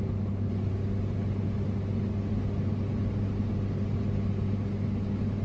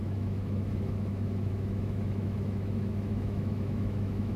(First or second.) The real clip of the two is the first